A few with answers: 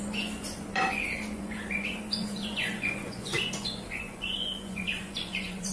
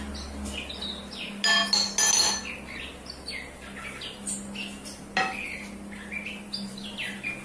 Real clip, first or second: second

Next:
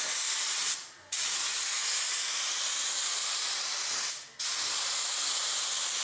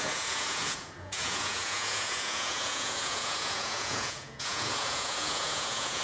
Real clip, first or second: first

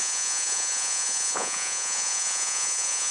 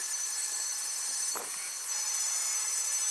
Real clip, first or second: second